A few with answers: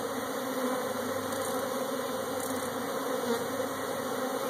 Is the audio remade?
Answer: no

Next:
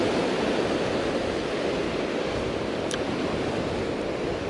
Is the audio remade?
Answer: no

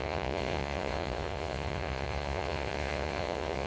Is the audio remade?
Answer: yes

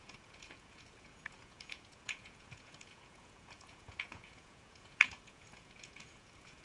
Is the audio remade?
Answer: yes